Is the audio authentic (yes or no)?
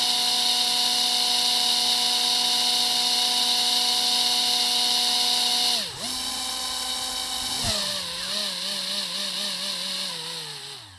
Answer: yes